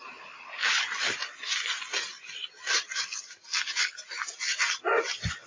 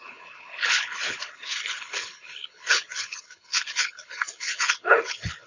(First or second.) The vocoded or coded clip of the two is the second